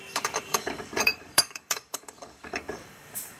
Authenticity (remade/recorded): remade